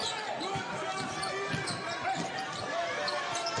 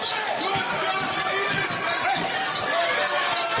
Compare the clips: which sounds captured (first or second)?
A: first